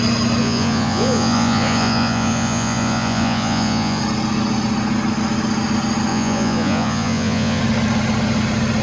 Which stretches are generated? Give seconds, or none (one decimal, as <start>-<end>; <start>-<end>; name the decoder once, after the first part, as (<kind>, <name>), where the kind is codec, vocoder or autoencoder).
0.4-4.0 (vocoder, Vocos); 6.1-7.6